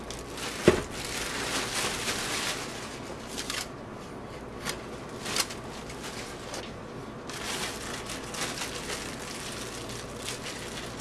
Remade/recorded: recorded